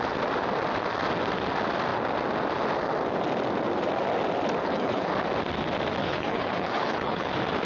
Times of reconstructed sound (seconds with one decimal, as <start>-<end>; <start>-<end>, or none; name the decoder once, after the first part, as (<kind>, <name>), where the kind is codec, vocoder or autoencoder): 4.6-5.1 (codec, HILCodec); 6.0-7.3